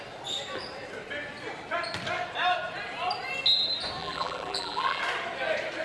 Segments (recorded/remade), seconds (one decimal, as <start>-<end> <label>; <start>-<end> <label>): 0.0-4.0 recorded; 4.0-5.0 remade; 5.0-5.8 recorded